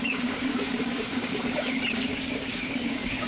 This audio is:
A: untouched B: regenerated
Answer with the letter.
B